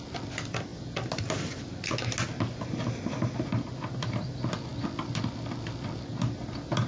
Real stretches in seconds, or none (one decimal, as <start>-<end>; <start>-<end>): 0.0-6.9